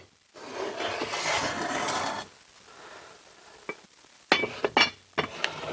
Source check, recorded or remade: recorded